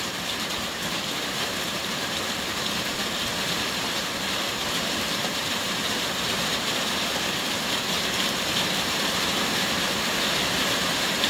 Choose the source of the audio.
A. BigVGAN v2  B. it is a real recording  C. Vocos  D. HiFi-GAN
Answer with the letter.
A